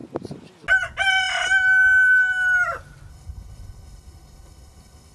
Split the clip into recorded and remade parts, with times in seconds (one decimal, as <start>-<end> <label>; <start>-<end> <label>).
0.0-3.1 recorded; 3.1-5.1 remade